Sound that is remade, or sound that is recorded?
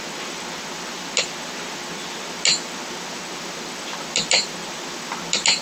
recorded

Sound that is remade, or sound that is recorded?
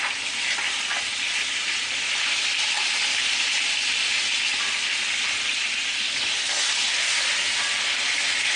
recorded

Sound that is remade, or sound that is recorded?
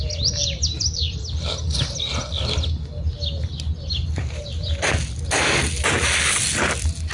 recorded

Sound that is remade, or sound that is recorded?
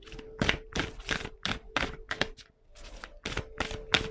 recorded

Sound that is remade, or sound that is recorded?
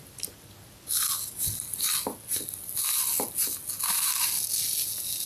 recorded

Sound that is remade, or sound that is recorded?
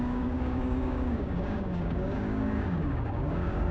remade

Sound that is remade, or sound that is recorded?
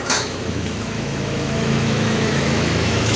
remade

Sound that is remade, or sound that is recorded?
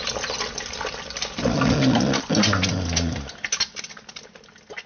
recorded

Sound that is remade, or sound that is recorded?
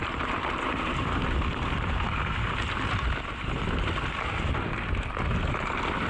recorded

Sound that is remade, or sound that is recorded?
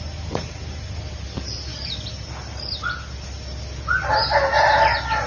recorded